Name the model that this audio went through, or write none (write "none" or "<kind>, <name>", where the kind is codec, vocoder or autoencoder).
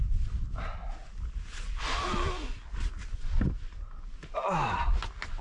none